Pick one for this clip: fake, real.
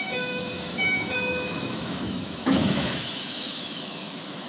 fake